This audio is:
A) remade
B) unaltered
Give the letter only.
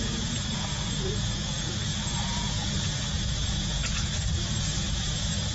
A